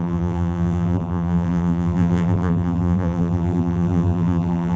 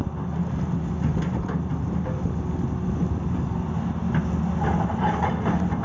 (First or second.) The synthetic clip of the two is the first